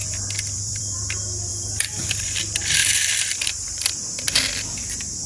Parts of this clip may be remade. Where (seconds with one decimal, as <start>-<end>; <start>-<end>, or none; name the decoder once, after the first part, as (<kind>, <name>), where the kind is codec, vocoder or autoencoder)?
0.0-1.0 (vocoder, BigVGAN v2); 1.5-2.4; 2.8-3.9